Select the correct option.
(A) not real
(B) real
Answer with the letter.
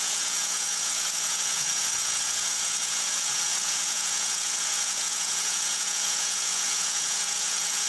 A